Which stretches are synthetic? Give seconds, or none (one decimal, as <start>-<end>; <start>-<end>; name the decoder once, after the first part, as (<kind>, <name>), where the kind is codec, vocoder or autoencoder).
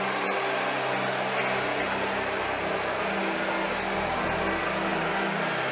none